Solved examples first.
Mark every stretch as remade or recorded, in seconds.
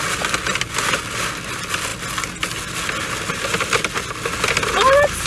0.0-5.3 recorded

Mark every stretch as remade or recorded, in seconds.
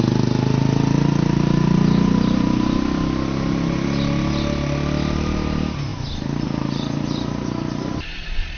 0.0-8.6 recorded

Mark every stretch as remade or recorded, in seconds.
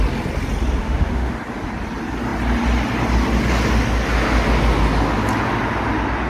0.0-0.8 recorded; 0.8-1.3 remade; 1.3-6.3 recorded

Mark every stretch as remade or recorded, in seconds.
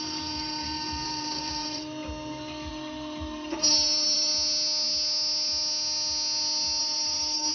0.0-2.0 remade; 2.0-2.7 recorded; 2.7-4.3 remade; 4.3-6.8 recorded; 6.8-7.5 remade